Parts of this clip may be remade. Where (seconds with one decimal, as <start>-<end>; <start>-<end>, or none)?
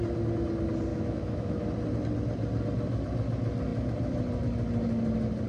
0.9-1.6